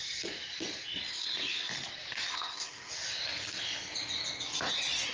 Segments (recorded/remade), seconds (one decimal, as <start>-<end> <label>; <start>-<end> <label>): 0.0-1.1 recorded; 1.1-1.7 remade; 1.7-2.3 recorded; 2.3-2.9 remade; 2.9-5.1 recorded